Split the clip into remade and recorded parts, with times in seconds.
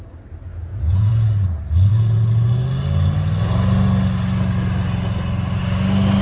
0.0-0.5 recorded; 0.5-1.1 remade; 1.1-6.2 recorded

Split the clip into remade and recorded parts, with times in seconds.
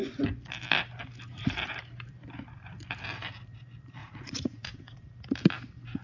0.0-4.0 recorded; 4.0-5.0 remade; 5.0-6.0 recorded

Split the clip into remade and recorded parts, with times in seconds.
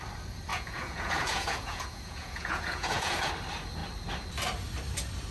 0.0-0.5 recorded; 0.5-3.3 remade; 3.3-5.3 recorded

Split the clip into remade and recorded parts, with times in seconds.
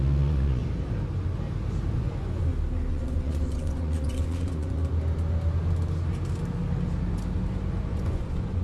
0.0-0.6 remade; 0.6-1.9 recorded; 1.9-2.4 remade; 2.4-2.9 recorded; 2.9-4.8 remade; 4.8-7.9 recorded; 7.9-8.6 remade